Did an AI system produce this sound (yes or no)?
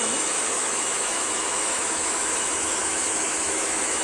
yes